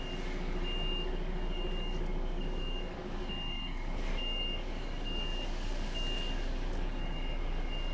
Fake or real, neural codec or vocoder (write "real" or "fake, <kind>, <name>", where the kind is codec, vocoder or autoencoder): fake, codec, DAC